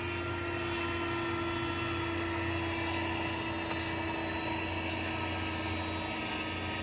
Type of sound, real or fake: real